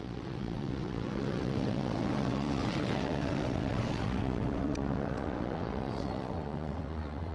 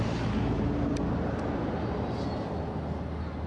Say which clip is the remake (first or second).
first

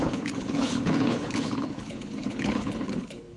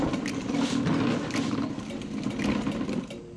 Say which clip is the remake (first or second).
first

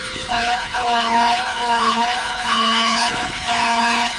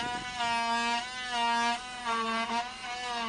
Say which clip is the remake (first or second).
first